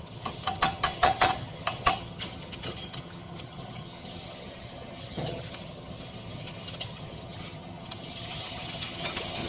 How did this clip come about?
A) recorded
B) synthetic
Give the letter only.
B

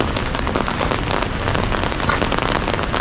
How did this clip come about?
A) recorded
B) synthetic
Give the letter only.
A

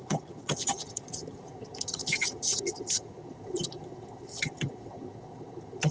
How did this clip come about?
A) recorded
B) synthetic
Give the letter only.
B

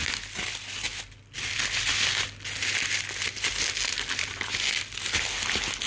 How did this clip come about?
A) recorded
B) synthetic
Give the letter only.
A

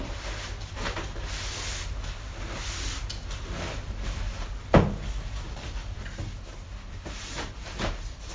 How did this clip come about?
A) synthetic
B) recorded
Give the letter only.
B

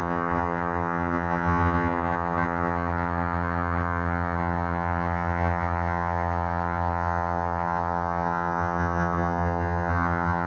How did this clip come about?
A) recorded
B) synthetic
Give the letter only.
B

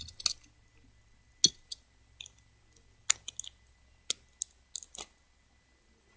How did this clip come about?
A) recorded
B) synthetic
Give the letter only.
A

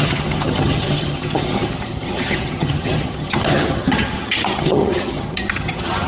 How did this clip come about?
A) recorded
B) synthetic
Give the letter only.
B